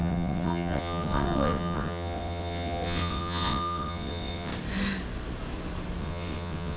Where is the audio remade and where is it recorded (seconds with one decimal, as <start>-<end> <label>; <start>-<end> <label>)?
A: 0.0-4.5 remade; 4.5-6.0 recorded; 6.0-6.8 remade